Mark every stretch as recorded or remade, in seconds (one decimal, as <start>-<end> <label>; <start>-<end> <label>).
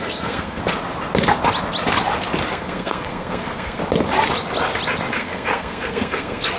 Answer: 0.0-0.6 remade; 0.6-2.5 recorded; 2.5-3.8 remade; 3.8-5.1 recorded; 5.1-6.6 remade